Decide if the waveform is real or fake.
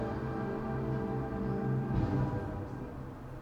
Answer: real